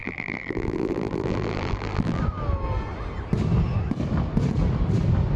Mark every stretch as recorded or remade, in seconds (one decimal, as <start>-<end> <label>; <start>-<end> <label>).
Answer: 0.0-2.2 remade; 2.2-5.4 recorded